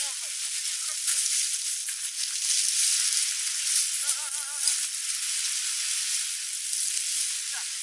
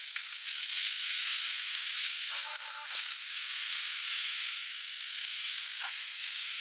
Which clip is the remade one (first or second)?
second